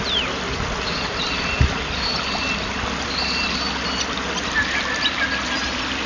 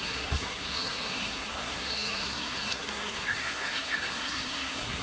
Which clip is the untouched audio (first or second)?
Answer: first